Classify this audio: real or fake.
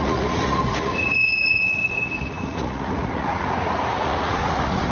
fake